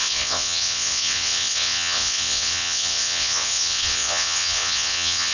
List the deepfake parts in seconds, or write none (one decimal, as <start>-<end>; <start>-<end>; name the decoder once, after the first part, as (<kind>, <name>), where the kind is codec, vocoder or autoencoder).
0.0-5.3 (vocoder, WaveNeXt)